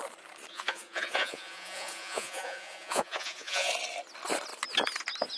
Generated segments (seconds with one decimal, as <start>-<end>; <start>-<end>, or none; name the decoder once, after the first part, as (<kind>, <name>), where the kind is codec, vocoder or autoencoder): 0.5-3.7 (vocoder, Vocos)